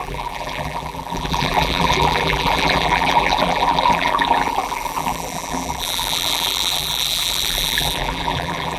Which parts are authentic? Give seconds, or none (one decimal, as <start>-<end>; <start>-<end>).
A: none